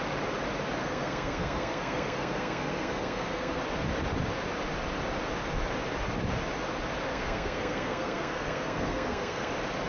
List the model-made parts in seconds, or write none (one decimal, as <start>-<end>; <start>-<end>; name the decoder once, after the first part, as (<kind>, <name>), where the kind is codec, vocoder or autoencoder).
0.8-3.6 (codec, SNAC); 7.1-9.5